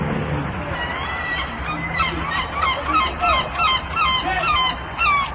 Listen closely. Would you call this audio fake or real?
real